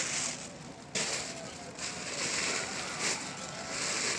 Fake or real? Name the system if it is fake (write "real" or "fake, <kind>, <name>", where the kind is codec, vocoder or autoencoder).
real